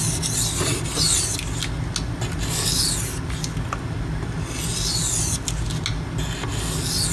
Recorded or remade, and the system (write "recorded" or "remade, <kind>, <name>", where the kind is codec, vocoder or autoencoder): recorded